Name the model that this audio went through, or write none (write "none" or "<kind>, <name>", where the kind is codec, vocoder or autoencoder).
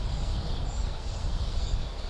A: codec, SNAC